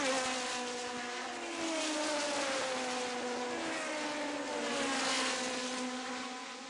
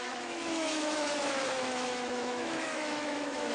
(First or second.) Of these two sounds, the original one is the first